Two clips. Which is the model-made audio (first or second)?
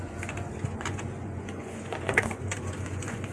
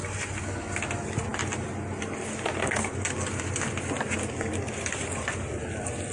first